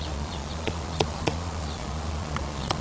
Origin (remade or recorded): remade